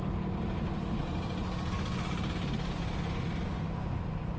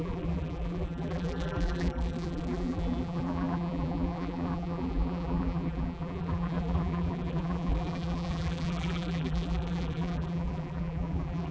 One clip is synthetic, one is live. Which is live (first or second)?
first